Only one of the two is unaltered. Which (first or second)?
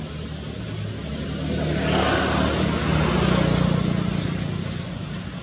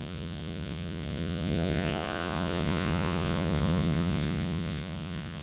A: first